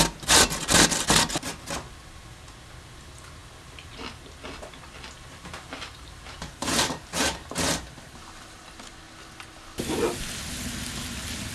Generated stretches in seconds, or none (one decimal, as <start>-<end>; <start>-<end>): 5.3-8.9